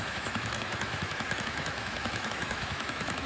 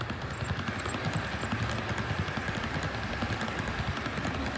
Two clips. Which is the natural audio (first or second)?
second